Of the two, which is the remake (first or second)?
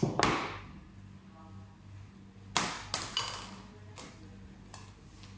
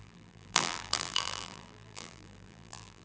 second